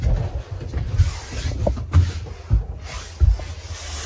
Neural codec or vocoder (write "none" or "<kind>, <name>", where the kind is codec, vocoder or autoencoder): none